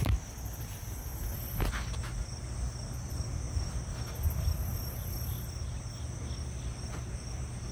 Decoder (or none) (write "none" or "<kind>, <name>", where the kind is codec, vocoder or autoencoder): none